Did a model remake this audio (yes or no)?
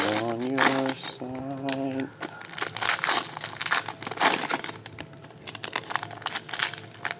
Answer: no